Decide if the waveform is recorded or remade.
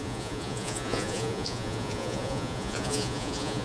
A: remade